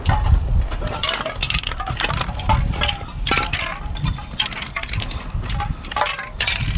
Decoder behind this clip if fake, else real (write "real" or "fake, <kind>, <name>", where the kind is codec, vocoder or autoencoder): real